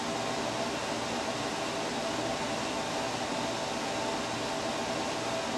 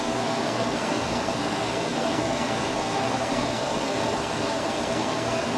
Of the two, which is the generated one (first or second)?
second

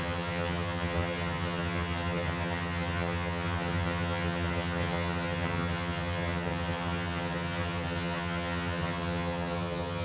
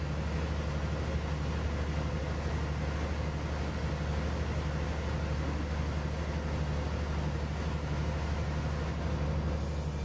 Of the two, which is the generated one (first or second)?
first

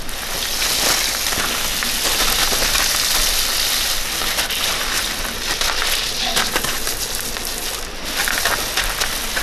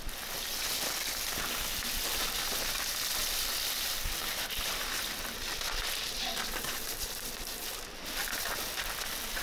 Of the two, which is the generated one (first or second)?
second